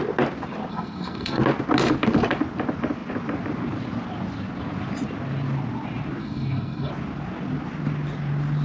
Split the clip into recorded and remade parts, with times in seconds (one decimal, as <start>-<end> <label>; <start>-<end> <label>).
0.0-0.7 recorded; 0.7-1.4 remade; 1.4-6.2 recorded; 6.2-6.9 remade; 6.9-8.6 recorded